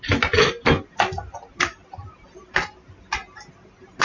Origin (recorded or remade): recorded